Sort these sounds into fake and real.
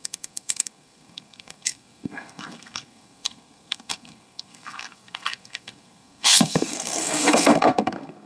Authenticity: fake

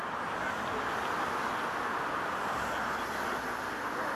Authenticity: real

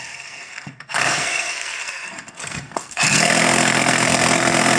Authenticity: fake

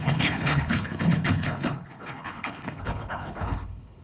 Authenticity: fake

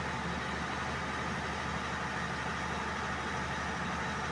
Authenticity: real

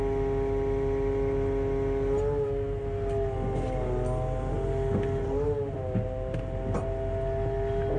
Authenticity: real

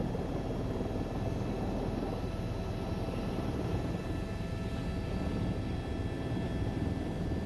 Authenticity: real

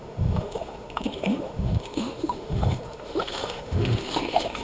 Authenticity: fake